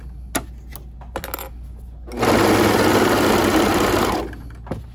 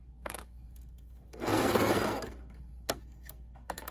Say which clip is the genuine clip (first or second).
first